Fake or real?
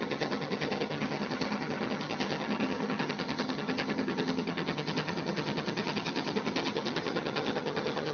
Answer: fake